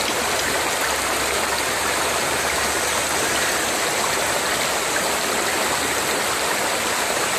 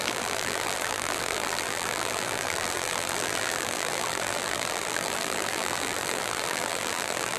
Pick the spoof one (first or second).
second